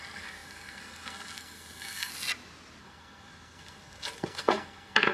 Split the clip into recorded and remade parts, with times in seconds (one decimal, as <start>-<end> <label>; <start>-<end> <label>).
0.0-2.1 remade; 2.1-2.8 recorded; 2.8-5.1 remade